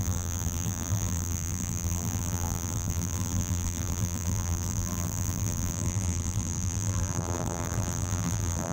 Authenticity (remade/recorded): remade